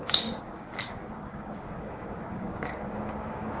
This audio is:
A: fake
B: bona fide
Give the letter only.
A